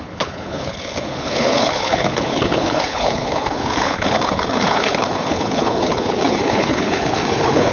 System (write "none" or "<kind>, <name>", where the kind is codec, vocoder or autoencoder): codec, HILCodec